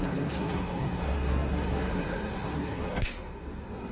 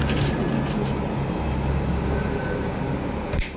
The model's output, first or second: first